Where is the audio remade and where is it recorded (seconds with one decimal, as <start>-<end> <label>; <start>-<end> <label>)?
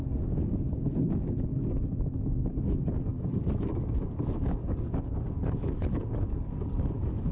0.0-7.3 remade